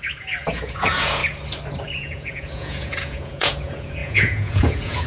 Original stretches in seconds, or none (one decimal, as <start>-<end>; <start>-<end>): 1.2-1.8